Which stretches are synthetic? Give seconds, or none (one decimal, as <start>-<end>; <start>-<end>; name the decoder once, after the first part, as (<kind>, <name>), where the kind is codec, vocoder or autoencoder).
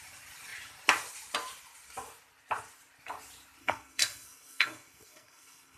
3.6-5.8 (codec, SNAC)